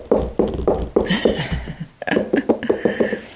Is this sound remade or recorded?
recorded